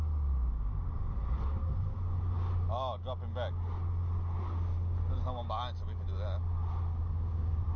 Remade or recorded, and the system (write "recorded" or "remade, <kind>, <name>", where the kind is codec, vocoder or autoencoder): recorded